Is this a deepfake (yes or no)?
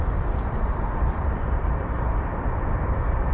yes